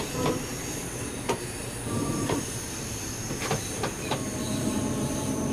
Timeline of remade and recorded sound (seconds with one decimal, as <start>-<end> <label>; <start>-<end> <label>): 0.0-5.5 remade